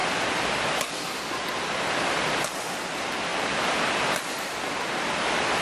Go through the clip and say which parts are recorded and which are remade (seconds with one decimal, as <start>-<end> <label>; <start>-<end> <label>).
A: 0.0-5.6 recorded